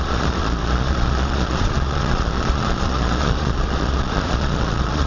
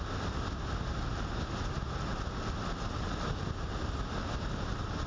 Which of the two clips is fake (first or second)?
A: first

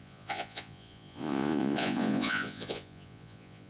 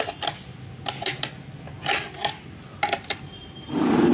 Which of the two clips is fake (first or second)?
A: first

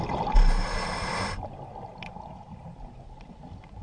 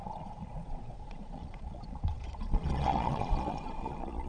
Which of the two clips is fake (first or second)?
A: second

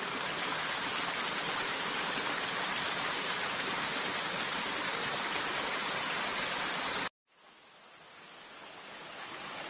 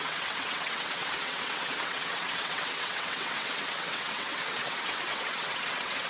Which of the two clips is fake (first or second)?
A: second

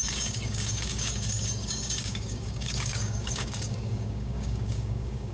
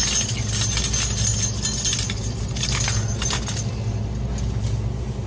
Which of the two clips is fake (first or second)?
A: first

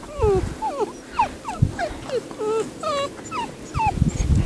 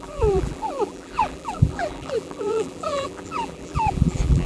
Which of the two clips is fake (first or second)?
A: second